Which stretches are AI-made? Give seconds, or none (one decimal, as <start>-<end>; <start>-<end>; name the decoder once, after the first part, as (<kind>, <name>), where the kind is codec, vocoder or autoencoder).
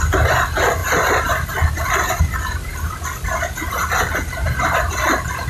none